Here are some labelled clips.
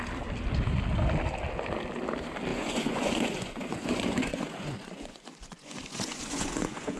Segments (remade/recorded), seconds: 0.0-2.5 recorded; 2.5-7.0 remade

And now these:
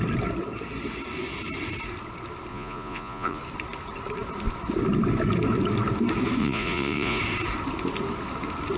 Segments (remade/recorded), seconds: 0.0-2.5 recorded; 2.5-3.4 remade; 3.4-6.4 recorded; 6.4-7.2 remade; 7.2-8.8 recorded